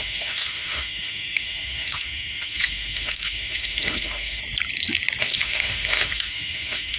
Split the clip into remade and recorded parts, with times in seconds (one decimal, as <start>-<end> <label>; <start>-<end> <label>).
0.0-4.4 remade; 4.4-5.2 recorded; 5.2-7.0 remade